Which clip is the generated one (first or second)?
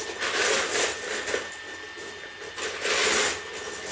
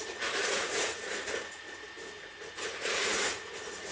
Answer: second